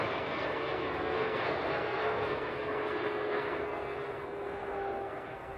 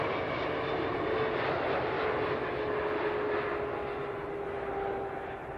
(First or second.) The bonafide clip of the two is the second